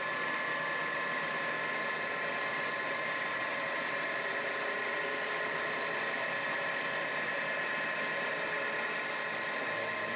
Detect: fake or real real